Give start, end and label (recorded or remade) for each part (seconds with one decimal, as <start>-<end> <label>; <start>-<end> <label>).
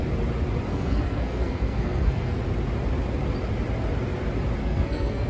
0.0-0.7 recorded; 0.7-2.4 remade; 2.4-4.6 recorded; 4.6-5.3 remade